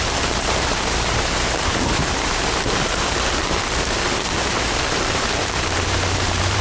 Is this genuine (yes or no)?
no